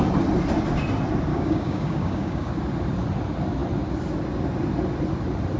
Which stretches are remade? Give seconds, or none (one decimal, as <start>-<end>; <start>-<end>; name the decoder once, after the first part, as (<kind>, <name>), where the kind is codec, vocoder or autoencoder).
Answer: 1.3-2.5 (codec, DAC)